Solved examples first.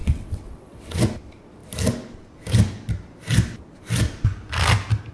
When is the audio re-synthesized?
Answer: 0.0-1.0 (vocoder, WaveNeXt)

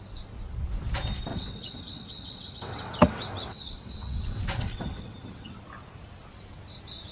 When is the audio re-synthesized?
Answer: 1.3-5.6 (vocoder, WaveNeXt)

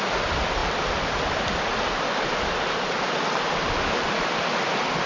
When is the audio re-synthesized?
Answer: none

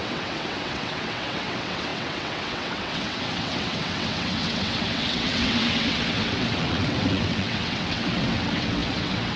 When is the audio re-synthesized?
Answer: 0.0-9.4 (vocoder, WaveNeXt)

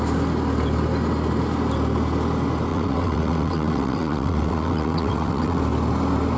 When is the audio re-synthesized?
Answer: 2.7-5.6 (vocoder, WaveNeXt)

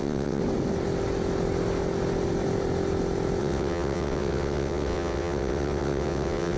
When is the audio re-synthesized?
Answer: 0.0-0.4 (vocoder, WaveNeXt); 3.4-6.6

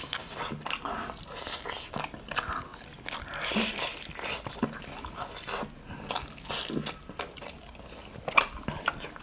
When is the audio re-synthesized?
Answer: none

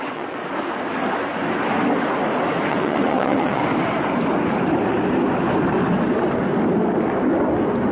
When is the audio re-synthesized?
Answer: 0.0-0.4 (vocoder, WaveNeXt); 2.7-3.6